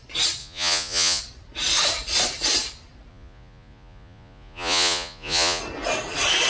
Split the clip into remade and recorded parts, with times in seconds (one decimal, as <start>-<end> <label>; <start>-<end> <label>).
0.0-0.4 recorded; 0.4-1.2 remade; 1.2-3.1 recorded; 3.1-5.6 remade; 5.6-6.5 recorded